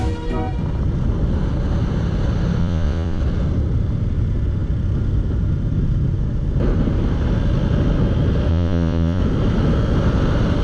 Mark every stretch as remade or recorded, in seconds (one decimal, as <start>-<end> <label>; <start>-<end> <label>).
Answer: 0.0-2.6 recorded; 2.6-3.2 remade; 3.2-8.5 recorded; 8.5-9.2 remade; 9.2-10.6 recorded